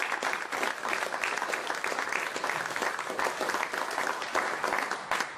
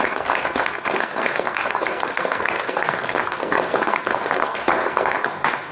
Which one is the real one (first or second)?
first